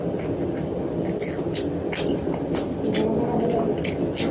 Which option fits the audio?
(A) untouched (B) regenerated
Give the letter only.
A